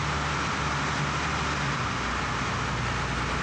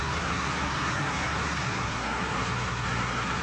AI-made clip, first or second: second